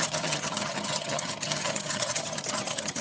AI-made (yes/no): yes